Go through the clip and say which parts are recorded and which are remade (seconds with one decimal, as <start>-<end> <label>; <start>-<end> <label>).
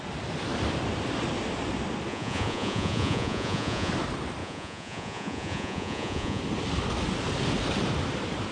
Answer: 0.0-2.1 recorded; 2.1-3.9 remade; 3.9-4.4 recorded; 4.4-6.4 remade; 6.4-8.5 recorded